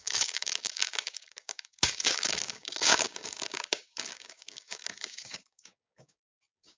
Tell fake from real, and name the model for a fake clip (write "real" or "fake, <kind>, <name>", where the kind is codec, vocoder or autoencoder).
fake, codec, DAC